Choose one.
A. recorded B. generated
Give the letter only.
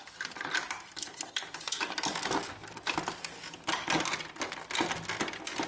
A